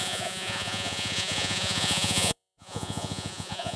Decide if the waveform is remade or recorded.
remade